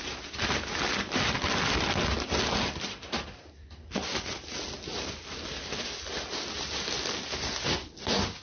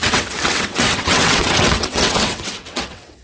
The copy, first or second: second